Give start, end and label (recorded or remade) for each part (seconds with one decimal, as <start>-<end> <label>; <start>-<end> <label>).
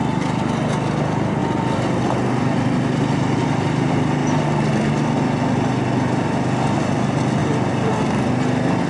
0.0-7.4 recorded; 7.4-8.3 remade; 8.3-8.9 recorded